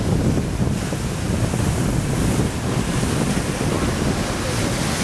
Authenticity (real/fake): real